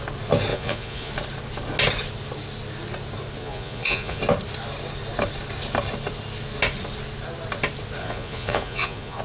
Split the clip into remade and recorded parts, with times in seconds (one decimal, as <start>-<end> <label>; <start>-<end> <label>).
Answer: 0.0-0.5 recorded; 0.5-1.1 remade; 1.1-3.4 recorded; 3.4-4.2 remade; 4.2-8.0 recorded; 8.0-9.2 remade